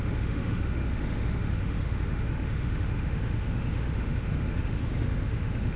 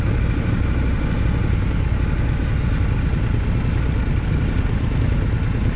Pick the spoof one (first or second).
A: first